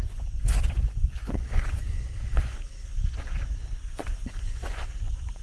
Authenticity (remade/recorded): remade